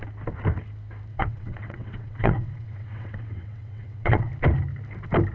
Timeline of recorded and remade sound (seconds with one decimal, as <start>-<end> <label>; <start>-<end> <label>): 0.0-1.1 recorded; 1.1-4.3 remade; 4.3-5.3 recorded